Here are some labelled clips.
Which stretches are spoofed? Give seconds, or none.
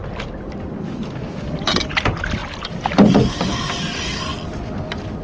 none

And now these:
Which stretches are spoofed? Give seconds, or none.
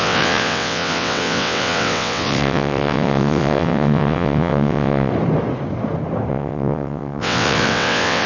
0.0-5.1 (vocoder, WaveNeXt); 6.3-8.3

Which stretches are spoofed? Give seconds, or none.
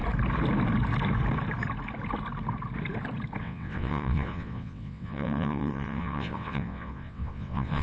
3.4-7.8 (vocoder, WaveNeXt)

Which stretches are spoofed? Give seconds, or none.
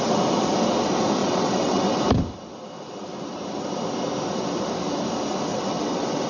1.2-2.0 (vocoder, WaveNeXt); 5.5-6.3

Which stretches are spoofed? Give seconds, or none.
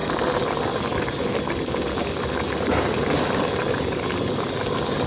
none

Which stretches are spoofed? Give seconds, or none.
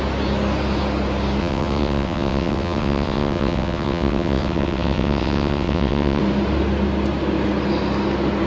1.4-6.2 (vocoder, WaveNeXt)